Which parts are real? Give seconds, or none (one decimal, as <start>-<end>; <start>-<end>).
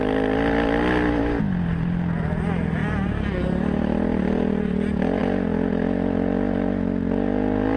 0.0-7.8